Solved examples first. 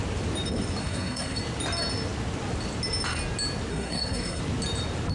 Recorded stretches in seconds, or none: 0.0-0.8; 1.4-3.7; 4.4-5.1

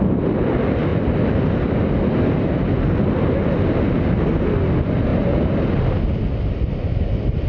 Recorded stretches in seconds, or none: 0.0-7.5

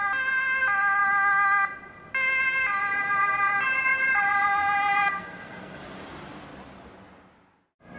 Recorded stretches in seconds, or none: 0.0-5.2; 5.8-8.0

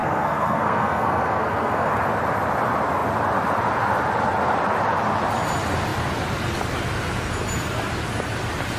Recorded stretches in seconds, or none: 1.9-8.8

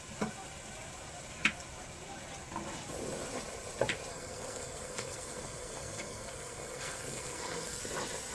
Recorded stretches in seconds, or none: 0.0-4.1; 7.8-8.3

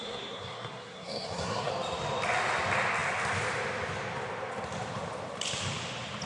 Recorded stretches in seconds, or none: 1.7-6.3

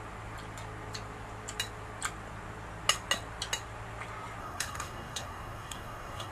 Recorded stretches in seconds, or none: 0.0-4.4